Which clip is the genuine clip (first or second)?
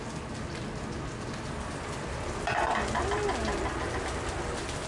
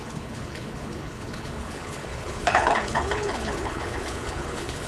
first